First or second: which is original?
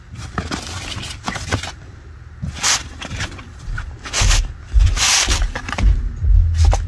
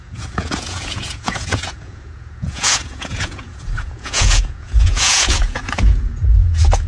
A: first